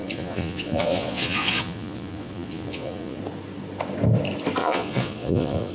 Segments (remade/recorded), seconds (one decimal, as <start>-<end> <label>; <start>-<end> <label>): 0.0-3.2 remade; 3.2-4.6 recorded; 4.6-5.7 remade